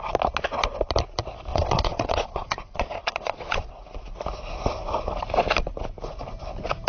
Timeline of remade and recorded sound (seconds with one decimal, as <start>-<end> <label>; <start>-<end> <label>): 0.0-1.5 recorded; 1.5-3.7 remade; 3.7-6.9 recorded